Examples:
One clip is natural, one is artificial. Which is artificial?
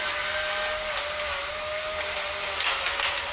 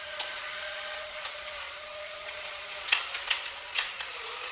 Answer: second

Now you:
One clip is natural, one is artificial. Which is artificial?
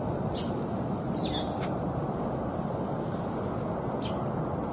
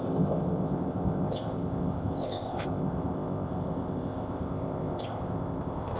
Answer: second